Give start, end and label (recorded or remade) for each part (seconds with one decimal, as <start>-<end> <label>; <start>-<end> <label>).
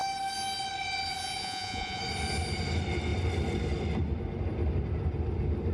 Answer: 0.0-1.4 recorded; 1.4-2.0 remade; 2.0-5.7 recorded